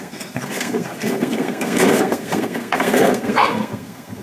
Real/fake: fake